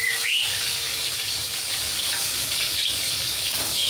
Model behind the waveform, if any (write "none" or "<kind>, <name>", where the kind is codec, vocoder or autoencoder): codec, DAC